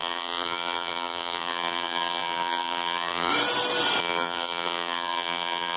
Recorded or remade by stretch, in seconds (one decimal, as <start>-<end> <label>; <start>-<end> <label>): 0.0-3.3 remade; 3.3-4.0 recorded; 4.0-5.8 remade